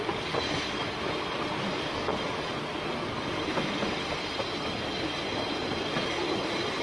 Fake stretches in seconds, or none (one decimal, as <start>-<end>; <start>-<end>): none